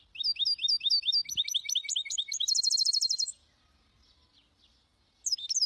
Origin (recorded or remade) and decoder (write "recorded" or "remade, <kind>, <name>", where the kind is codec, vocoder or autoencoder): recorded